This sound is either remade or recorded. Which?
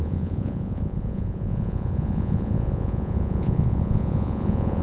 remade